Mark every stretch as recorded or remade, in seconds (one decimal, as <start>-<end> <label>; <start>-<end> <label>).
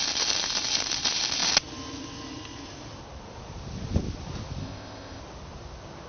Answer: 0.0-4.6 recorded; 4.6-5.2 remade; 5.2-6.1 recorded